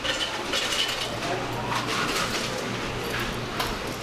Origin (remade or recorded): recorded